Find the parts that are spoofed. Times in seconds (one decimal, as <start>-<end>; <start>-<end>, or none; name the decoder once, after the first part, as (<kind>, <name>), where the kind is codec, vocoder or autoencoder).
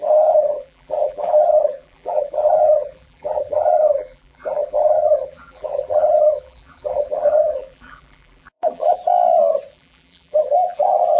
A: 0.0-9.0 (vocoder, BigVGAN v2); 9.7-11.2